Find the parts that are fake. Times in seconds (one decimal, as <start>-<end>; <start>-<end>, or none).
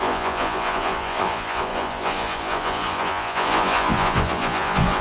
0.0-5.0